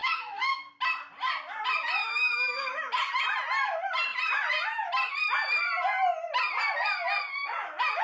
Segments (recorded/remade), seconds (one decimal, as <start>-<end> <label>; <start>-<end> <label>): 0.0-0.7 remade; 0.7-2.0 recorded; 2.0-2.8 remade; 2.8-8.0 recorded